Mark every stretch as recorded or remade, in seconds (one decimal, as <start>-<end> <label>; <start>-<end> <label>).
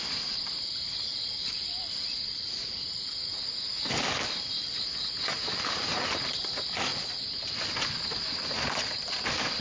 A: 0.0-1.1 recorded; 1.1-2.7 remade; 2.7-9.6 recorded